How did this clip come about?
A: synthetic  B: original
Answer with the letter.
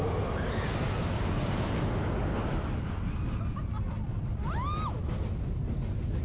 B